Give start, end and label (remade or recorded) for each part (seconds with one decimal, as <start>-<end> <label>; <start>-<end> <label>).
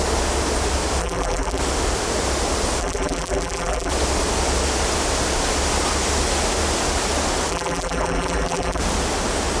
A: 0.0-1.0 recorded; 1.0-1.6 remade; 1.6-2.8 recorded; 2.8-3.9 remade; 3.9-7.5 recorded; 7.5-8.8 remade; 8.8-9.6 recorded